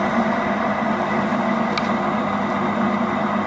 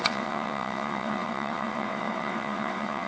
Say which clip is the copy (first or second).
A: second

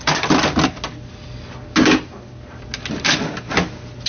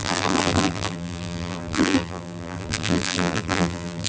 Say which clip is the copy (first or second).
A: second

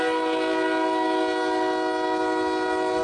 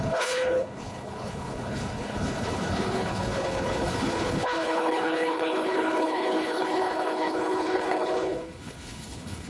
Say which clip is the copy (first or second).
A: second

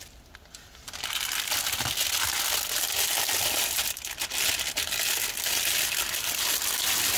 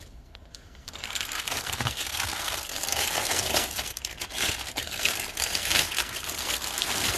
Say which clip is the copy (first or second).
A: second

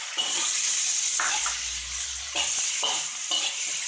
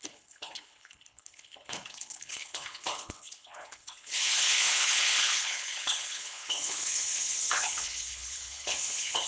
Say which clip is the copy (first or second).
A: second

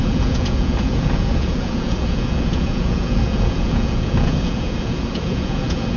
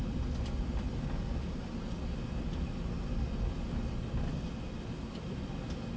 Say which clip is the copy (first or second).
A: first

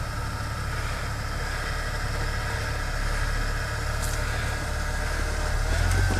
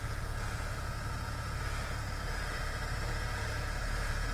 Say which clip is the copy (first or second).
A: second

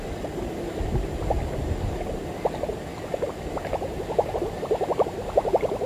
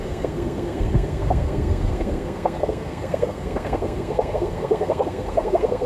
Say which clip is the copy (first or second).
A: second